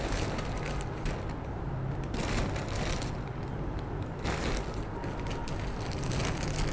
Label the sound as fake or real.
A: real